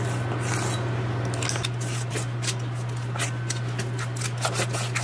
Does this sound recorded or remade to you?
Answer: recorded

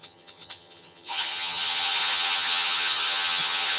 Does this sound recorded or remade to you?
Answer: remade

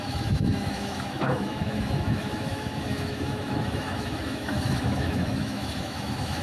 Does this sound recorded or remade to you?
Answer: remade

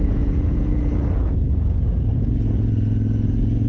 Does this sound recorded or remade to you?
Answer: remade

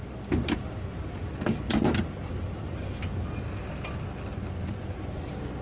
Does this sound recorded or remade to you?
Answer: recorded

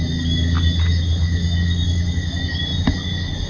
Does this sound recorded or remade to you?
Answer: recorded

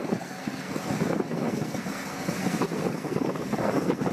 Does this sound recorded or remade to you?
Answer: remade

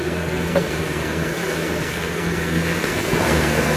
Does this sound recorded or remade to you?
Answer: remade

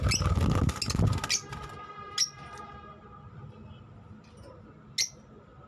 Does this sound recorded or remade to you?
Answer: recorded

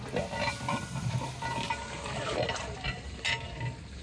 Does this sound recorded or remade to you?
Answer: recorded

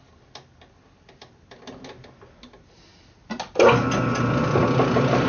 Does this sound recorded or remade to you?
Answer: recorded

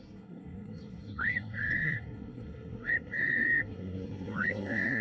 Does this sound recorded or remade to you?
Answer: remade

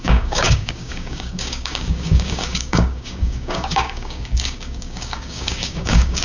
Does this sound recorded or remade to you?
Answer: remade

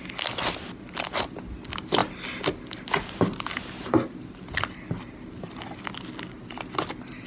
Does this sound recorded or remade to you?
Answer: recorded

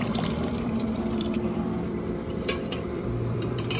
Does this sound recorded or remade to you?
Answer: remade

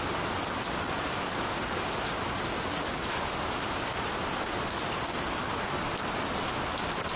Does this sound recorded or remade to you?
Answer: recorded